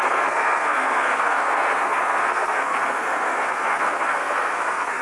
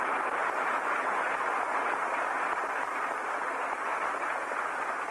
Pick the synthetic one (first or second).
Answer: first